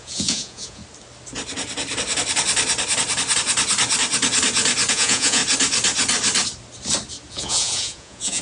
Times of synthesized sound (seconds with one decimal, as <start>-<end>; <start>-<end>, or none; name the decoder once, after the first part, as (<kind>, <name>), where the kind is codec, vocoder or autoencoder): 0.0-0.8 (vocoder, Vocos); 4.9-5.4; 7.3-8.4